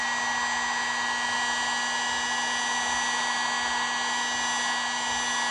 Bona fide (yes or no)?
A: yes